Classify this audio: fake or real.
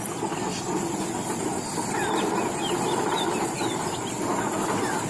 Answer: real